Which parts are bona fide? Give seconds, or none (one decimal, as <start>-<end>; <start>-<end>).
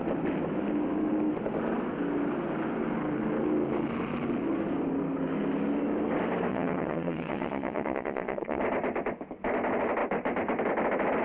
0.0-6.5; 8.6-11.2